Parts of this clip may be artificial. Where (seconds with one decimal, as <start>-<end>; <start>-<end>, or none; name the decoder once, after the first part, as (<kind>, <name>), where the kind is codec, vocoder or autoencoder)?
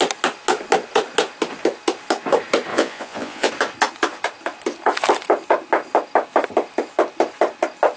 2.7-3.5 (vocoder, Vocos)